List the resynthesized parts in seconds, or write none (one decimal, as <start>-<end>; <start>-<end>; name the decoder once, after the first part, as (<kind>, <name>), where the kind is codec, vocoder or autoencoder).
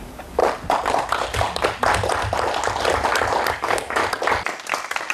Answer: 0.0-0.4 (codec, DAC); 3.5-4.0